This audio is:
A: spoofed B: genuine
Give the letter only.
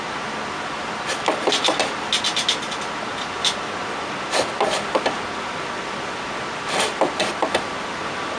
B